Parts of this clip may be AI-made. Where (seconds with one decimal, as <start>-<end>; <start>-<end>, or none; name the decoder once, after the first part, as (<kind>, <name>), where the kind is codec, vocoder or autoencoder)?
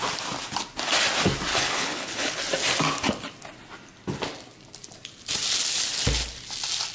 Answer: 1.5-2.4 (codec, HILCodec)